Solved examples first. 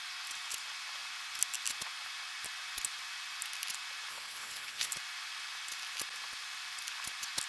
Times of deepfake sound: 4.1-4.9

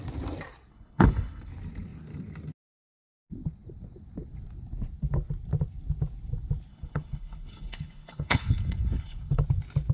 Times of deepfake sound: 0.7-1.5; 6.7-9.4

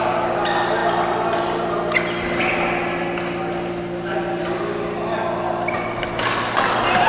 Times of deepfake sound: none